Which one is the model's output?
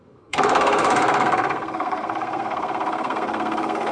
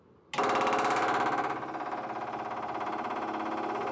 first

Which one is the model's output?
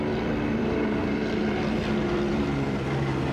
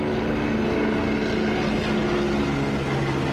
first